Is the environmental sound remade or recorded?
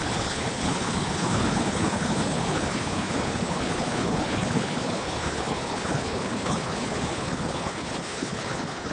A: remade